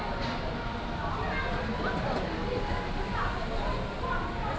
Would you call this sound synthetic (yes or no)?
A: no